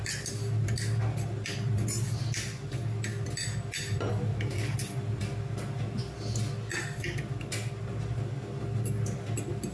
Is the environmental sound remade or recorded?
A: recorded